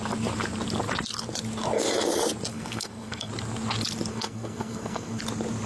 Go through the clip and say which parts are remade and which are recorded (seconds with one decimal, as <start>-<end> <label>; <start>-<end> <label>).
0.0-2.5 recorded; 2.5-3.3 remade; 3.3-4.1 recorded; 4.1-5.2 remade; 5.2-5.7 recorded